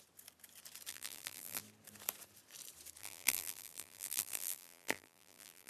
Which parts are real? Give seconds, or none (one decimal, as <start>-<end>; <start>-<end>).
0.0-0.9; 1.6-3.0